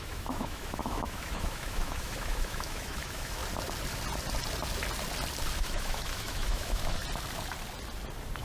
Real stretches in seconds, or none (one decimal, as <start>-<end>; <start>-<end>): 3.4-5.6; 7.0-8.4